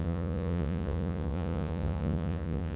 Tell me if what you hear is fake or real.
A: fake